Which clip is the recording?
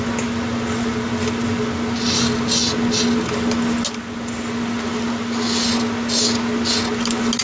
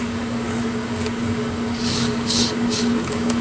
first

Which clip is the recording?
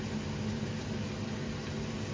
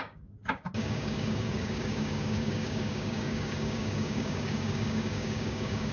first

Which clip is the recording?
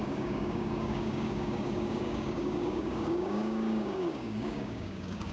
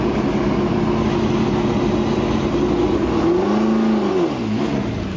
second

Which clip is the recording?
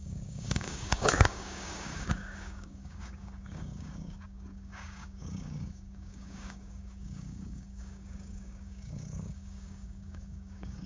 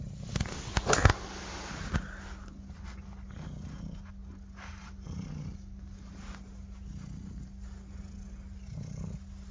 second